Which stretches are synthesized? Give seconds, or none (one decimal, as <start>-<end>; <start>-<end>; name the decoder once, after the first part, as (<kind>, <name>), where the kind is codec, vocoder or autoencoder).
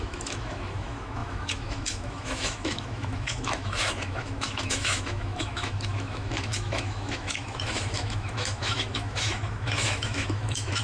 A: 0.0-10.8 (autoencoder, DAC-VAE)